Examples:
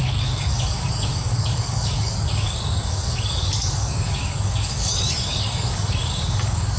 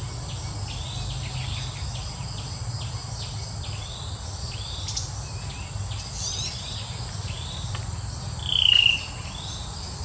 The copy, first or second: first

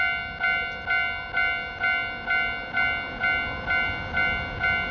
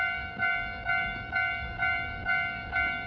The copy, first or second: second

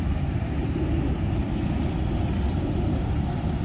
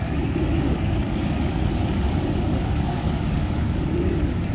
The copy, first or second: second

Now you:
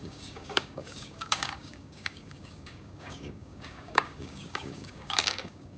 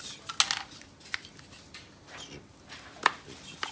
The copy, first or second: first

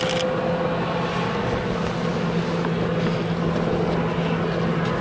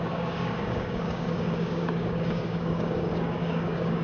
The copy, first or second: second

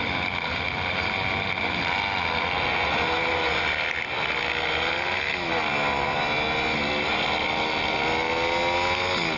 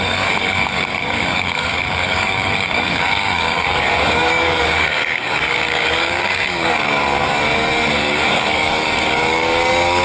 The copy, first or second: second